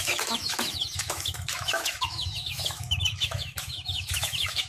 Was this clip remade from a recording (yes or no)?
yes